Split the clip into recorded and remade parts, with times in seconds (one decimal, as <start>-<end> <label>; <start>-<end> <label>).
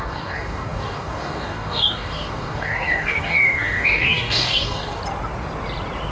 0.0-5.0 remade; 5.0-6.1 recorded